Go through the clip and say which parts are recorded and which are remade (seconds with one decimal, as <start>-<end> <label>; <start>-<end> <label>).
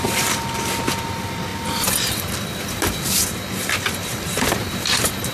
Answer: 0.0-5.3 recorded